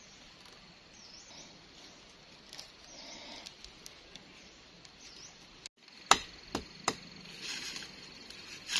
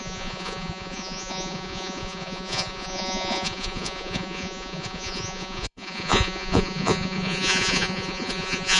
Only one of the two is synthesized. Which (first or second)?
second